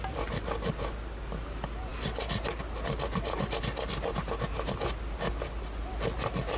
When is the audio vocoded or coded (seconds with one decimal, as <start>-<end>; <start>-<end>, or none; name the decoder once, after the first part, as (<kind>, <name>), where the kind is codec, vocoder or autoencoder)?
none